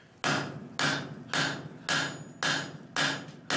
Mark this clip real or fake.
real